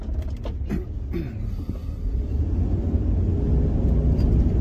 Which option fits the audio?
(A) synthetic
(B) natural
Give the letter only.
B